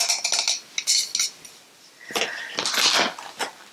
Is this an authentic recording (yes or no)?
yes